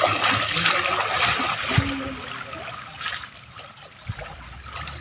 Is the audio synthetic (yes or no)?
no